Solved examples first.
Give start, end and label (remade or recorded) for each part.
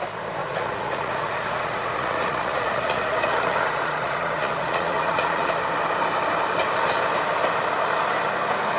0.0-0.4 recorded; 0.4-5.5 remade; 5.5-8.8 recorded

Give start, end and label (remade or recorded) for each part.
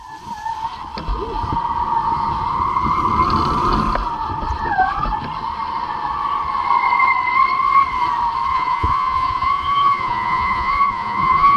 0.0-8.5 recorded; 8.5-11.6 remade